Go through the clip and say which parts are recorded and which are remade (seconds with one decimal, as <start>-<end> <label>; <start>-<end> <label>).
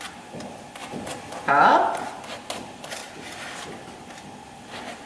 0.0-0.8 remade; 0.8-1.5 recorded; 1.5-3.0 remade; 3.0-3.6 recorded; 3.6-5.1 remade